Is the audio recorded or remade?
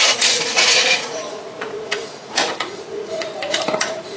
remade